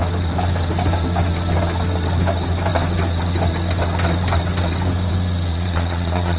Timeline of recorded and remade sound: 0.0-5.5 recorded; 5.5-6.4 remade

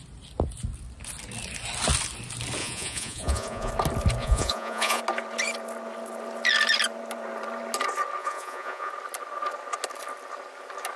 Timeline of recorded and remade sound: 0.0-2.6 recorded; 2.6-3.7 remade; 3.7-4.2 recorded; 4.2-5.0 remade; 5.0-8.2 recorded; 8.2-8.9 remade; 8.9-11.0 recorded